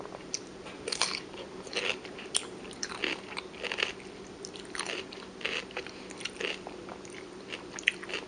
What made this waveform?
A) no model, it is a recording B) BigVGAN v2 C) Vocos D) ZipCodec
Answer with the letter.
A